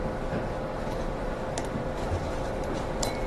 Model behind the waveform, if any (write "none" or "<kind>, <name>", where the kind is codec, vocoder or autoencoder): vocoder, BigVGAN v2